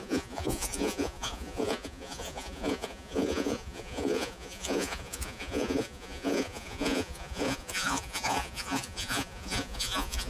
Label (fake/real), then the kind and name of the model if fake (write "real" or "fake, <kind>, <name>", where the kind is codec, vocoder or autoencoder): fake, vocoder, Vocos